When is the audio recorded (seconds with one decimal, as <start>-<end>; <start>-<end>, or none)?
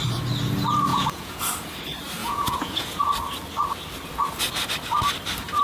0.0-0.9; 1.4-2.2; 3.0-5.6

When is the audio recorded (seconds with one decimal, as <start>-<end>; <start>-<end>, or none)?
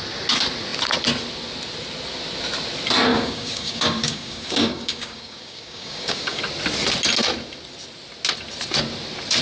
0.0-3.1; 6.4-9.4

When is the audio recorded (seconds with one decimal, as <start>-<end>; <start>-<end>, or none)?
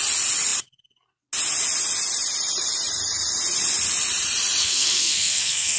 0.0-4.6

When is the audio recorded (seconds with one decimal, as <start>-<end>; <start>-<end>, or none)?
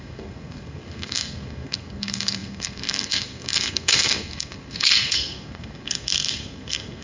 none